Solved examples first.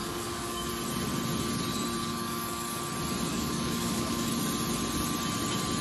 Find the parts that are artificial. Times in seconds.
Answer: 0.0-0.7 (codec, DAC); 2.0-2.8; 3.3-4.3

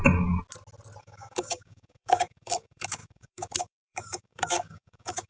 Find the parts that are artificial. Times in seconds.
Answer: 1.0-5.3 (codec, DAC)